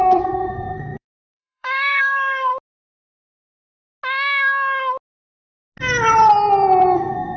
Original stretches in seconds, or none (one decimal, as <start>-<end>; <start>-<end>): 2.5-6.9